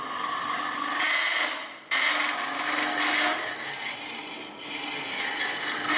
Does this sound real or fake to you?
real